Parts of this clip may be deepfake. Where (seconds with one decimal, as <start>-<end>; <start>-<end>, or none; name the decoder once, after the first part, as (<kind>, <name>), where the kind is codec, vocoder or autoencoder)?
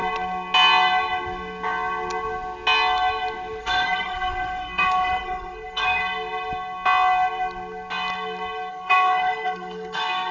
3.6-6.0 (codec, SNAC); 8.7-10.3